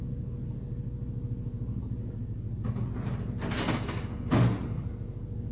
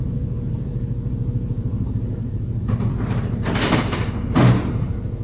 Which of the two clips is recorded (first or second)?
first